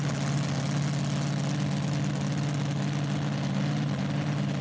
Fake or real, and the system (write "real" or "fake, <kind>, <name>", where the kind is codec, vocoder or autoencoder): real